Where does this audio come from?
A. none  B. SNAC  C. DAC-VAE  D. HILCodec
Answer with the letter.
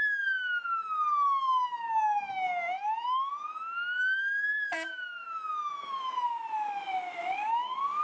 C